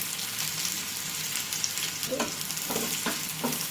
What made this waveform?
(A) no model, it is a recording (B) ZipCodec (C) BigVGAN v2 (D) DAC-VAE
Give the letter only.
A